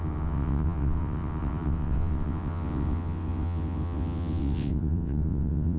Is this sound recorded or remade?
remade